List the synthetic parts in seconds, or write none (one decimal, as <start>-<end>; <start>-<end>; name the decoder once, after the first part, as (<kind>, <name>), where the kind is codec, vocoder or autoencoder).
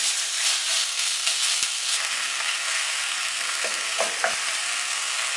0.8-4.0 (codec, SNAC); 4.6-5.4